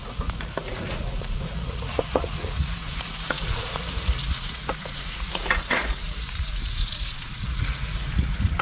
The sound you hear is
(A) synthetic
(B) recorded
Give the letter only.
A